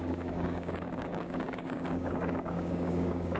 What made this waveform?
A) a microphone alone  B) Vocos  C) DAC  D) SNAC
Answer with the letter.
C